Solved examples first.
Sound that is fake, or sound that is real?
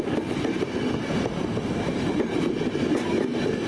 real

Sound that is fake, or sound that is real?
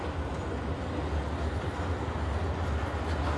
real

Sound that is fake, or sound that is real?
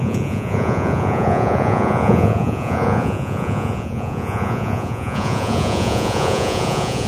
fake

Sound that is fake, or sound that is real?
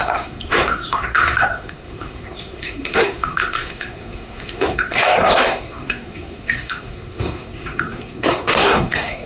fake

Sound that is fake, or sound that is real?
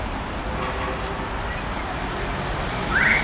real